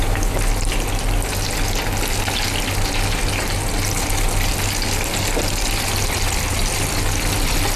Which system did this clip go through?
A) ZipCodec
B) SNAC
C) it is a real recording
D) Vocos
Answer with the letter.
C